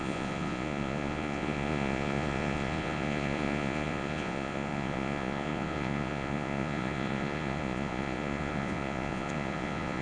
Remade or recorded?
remade